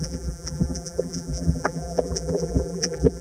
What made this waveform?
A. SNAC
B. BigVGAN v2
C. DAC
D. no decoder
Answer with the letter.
B